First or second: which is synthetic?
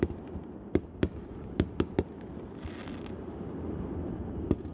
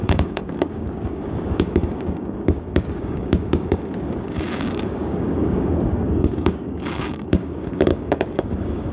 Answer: second